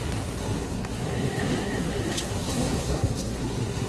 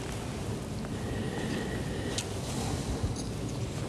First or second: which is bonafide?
second